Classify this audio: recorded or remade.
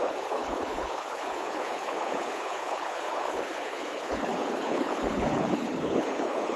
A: remade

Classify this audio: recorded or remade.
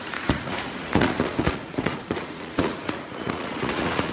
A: remade